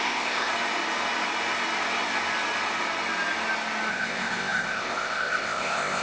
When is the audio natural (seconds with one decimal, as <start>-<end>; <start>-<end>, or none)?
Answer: 0.5-3.9